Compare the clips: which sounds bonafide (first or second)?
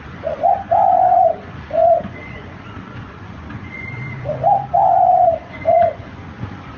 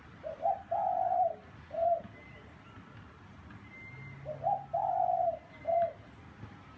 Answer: second